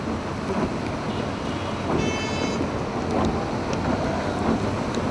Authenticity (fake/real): real